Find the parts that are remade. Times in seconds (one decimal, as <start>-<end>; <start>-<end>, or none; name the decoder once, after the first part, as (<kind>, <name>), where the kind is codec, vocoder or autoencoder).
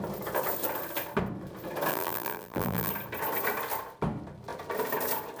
1.9-2.9 (vocoder, BigVGAN v2)